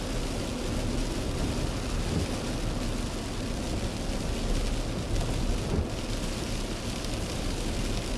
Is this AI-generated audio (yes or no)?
no